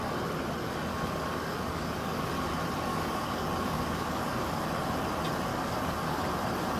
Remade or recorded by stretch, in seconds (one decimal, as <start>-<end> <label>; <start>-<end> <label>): 0.0-0.9 recorded; 0.9-2.3 remade; 2.3-2.9 recorded; 2.9-4.6 remade; 4.6-5.5 recorded; 5.5-6.2 remade; 6.2-6.8 recorded